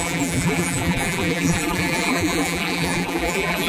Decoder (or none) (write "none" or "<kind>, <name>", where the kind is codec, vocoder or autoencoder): vocoder, BigVGAN v2